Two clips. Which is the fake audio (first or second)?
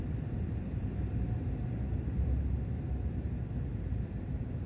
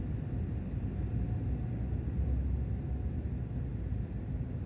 first